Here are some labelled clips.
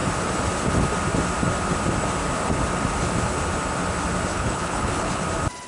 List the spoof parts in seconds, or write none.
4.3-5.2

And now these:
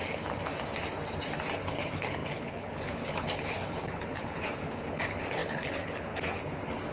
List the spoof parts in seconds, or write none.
1.5-6.9

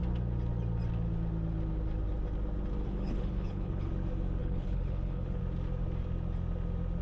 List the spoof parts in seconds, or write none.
2.8-3.9; 4.4-5.4

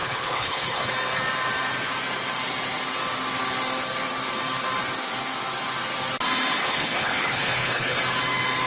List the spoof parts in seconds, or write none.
0.0-0.9; 6.6-8.0

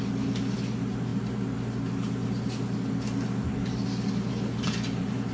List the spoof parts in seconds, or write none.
none

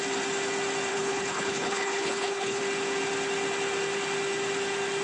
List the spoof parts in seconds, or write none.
0.9-2.6

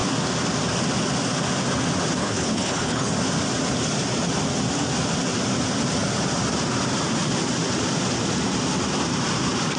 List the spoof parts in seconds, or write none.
2.2-3.1